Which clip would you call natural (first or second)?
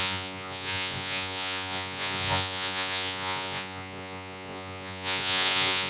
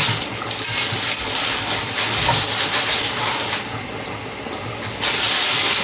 second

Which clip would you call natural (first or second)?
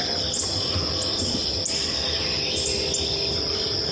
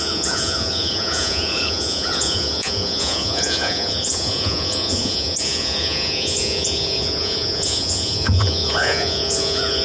first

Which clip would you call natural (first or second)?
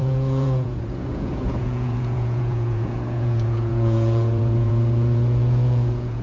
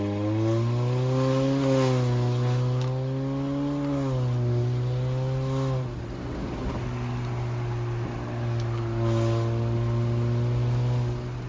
second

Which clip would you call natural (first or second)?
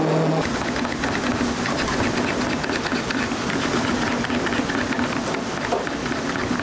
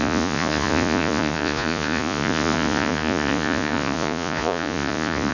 first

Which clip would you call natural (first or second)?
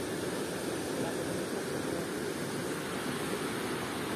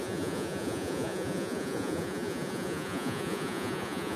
first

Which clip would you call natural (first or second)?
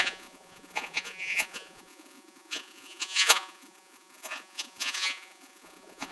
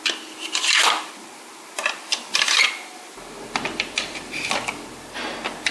second